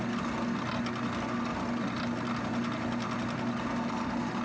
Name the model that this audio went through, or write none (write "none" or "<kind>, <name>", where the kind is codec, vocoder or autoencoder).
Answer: none